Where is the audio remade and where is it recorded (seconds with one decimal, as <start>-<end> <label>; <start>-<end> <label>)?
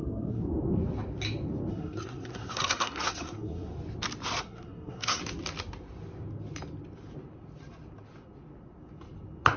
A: 0.0-0.4 remade; 0.4-1.7 recorded; 1.7-3.7 remade; 3.7-4.4 recorded; 4.4-5.2 remade; 5.2-9.6 recorded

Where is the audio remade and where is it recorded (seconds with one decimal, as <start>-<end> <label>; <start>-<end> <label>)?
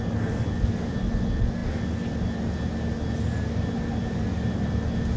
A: 0.0-5.2 recorded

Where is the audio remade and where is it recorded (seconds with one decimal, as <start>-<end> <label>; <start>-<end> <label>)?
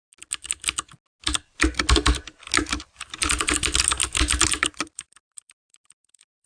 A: 0.0-4.6 recorded; 4.6-6.5 remade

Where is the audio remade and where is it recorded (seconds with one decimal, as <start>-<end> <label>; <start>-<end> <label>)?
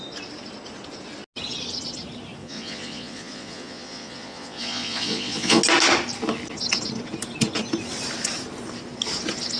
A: 0.0-2.4 recorded; 2.4-5.6 remade; 5.6-9.6 recorded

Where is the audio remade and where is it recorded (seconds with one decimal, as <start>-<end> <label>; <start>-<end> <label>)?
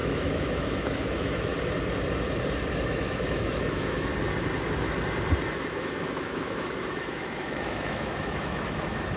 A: 0.0-1.5 remade; 1.5-2.8 recorded; 2.8-4.1 remade; 4.1-5.5 recorded; 5.5-9.2 remade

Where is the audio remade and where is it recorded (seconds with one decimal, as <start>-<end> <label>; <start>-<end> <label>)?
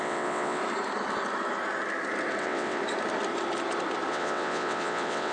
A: 0.0-0.6 remade; 0.6-2.4 recorded; 2.4-2.8 remade; 2.8-4.1 recorded; 4.1-5.3 remade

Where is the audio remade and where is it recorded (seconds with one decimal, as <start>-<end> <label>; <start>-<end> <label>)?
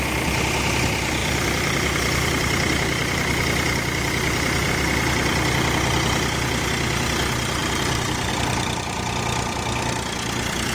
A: 0.0-1.2 recorded; 1.2-4.7 remade; 4.7-7.6 recorded; 7.6-8.3 remade; 8.3-10.7 recorded